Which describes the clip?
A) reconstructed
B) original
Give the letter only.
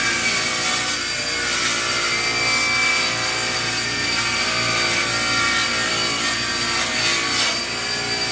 B